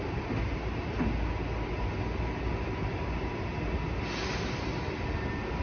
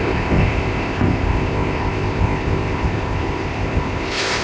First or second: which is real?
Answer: first